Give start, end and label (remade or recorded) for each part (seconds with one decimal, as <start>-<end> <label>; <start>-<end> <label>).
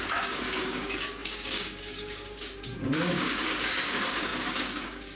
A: 0.0-5.2 remade